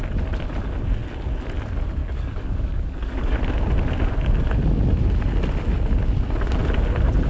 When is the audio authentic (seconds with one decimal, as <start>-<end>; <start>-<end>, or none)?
0.0-2.0; 3.4-7.3

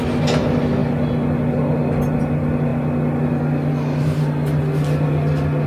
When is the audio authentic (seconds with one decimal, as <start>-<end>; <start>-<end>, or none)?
0.0-5.7

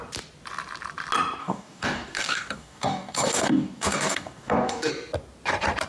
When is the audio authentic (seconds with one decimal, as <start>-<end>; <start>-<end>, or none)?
0.0-1.4; 4.9-5.9

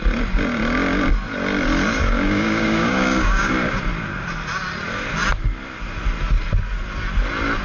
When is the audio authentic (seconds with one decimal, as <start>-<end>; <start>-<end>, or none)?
0.0-2.0; 3.8-7.6

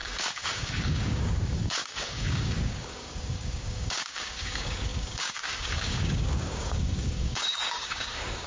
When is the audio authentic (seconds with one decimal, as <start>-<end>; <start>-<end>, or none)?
none

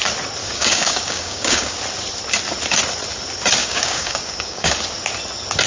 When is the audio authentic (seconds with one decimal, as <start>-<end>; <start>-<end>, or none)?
0.0-0.4; 1.8-3.6; 4.7-5.7